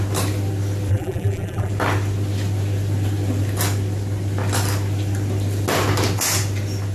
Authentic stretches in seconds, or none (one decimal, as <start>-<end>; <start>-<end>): 0.0-0.9; 1.7-6.9